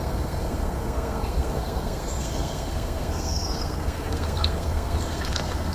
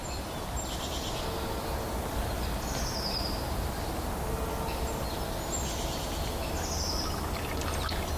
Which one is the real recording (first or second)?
second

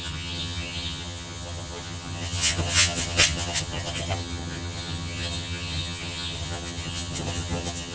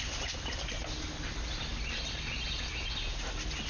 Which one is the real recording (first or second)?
second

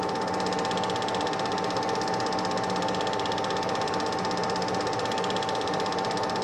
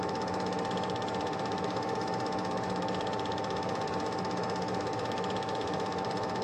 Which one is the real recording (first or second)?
first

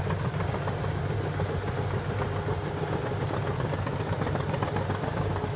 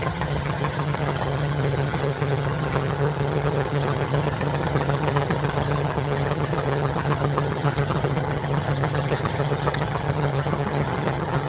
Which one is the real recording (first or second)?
first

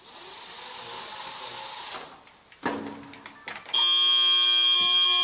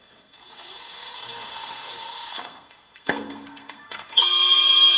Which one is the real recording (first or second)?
first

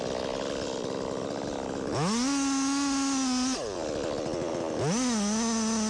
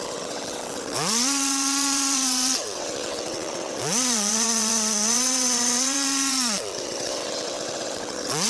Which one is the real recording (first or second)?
first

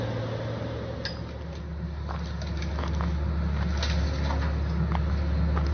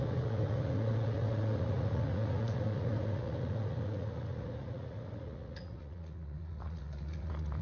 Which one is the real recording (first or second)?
first